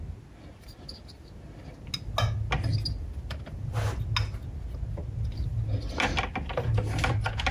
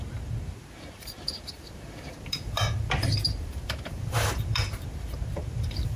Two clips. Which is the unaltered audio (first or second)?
first